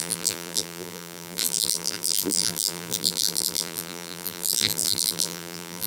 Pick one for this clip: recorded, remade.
remade